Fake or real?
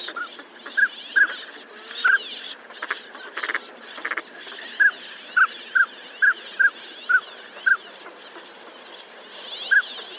real